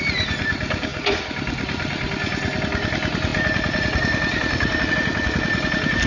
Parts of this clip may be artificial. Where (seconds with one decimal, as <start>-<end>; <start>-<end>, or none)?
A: none

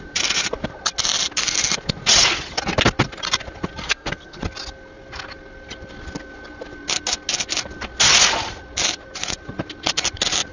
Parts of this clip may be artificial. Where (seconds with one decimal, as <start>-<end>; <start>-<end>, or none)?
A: 3.8-4.4

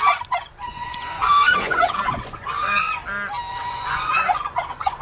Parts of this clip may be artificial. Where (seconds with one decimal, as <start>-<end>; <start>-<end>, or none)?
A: 0.0-3.0; 3.5-5.0

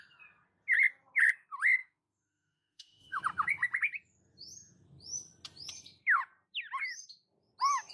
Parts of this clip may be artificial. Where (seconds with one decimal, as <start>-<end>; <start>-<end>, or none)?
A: 1.8-3.2